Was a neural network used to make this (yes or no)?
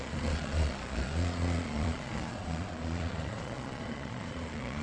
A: yes